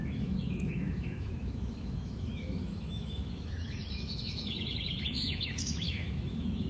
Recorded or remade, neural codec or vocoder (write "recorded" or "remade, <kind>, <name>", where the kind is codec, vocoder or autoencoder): remade, autoencoder, DAC-VAE